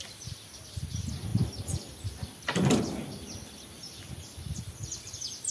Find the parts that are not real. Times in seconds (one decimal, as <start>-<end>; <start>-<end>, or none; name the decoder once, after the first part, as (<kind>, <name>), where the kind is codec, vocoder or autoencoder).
none